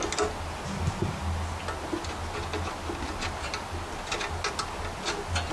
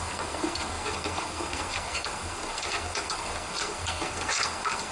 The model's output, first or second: second